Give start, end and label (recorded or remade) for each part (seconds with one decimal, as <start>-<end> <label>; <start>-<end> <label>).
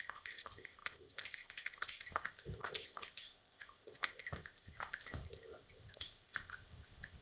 0.0-7.2 remade